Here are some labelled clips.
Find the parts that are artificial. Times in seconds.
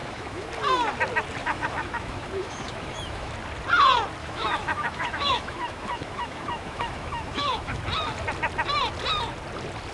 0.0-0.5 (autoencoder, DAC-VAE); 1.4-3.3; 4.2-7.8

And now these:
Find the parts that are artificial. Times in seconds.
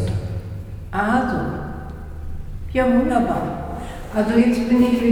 3.1-3.7 (autoencoder, DAC-VAE); 4.4-5.1